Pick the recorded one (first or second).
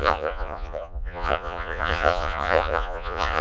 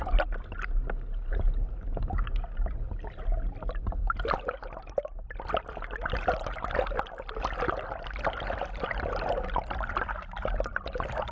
second